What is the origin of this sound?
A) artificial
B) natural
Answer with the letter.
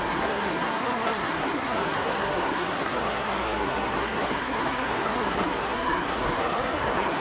A